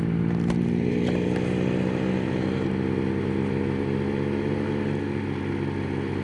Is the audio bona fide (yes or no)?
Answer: yes